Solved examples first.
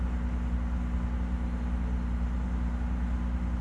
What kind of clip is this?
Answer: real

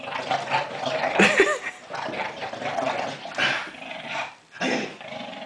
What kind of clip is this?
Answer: fake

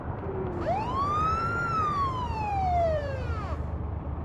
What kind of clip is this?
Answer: fake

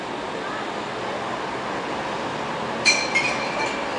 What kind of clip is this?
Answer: real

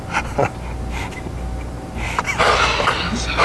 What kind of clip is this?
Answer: real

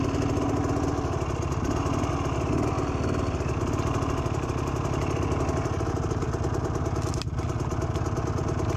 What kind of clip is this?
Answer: real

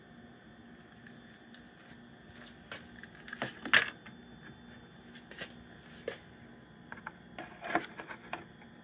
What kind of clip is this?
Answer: real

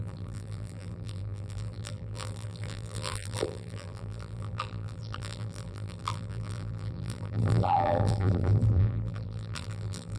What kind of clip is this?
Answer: fake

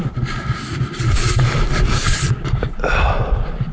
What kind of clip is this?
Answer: fake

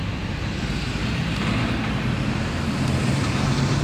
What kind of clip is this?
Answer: fake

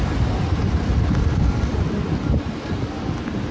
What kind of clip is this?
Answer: fake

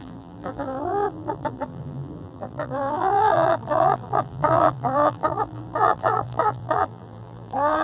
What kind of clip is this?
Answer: fake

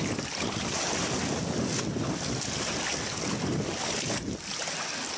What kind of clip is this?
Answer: real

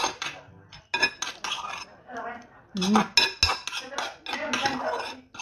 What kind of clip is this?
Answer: real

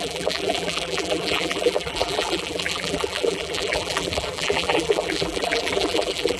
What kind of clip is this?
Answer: fake